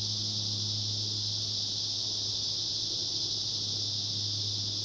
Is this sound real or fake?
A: real